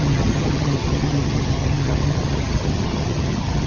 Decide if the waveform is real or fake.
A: fake